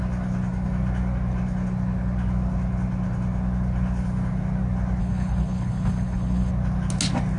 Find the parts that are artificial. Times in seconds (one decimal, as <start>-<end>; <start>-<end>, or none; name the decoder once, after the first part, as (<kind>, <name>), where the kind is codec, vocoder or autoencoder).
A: 5.0-6.5 (codec, HILCodec)

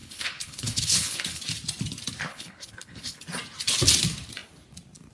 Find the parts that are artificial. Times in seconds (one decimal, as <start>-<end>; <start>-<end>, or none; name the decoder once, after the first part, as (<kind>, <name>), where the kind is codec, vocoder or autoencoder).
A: 0.0-1.4 (codec, HILCodec); 2.3-3.2